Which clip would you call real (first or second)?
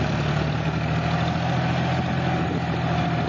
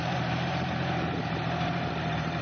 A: first